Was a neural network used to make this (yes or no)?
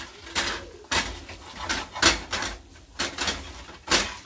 no